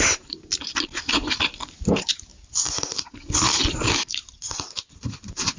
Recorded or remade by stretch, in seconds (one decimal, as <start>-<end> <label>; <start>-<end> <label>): 0.0-2.3 remade; 2.3-3.6 recorded; 3.6-5.6 remade